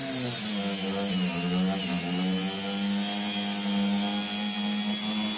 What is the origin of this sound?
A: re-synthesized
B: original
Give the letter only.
B